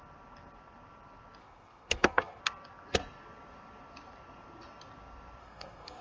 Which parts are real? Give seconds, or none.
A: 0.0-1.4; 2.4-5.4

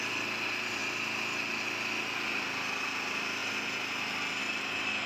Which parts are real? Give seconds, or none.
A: 0.0-5.1

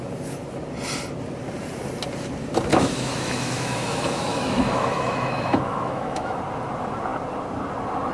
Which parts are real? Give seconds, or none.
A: 0.0-2.7; 6.4-8.1

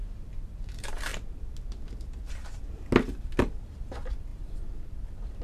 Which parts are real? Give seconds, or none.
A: 1.1-3.4

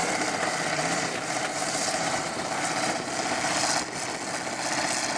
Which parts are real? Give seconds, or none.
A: 3.1-5.2